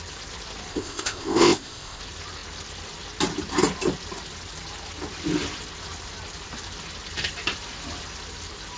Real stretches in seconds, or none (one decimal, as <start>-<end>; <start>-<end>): 0.0-0.7; 2.0-8.8